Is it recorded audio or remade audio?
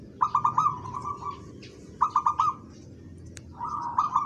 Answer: remade